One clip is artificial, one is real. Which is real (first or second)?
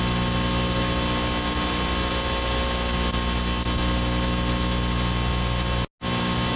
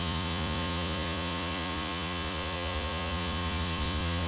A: first